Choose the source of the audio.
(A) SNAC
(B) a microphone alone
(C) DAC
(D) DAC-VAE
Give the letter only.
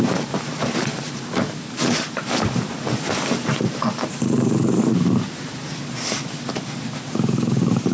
B